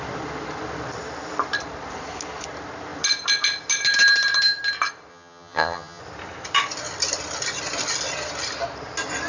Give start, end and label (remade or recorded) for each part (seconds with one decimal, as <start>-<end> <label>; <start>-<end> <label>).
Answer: 0.0-5.1 recorded; 5.1-6.0 remade; 6.0-9.3 recorded